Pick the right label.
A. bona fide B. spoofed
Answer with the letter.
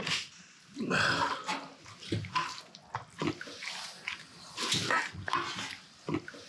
A